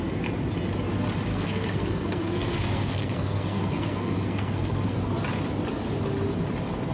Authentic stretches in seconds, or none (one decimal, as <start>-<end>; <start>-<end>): 0.0-1.3; 5.0-6.9